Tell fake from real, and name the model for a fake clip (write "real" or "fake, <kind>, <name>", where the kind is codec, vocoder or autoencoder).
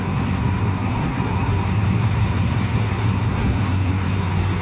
fake, codec, SNAC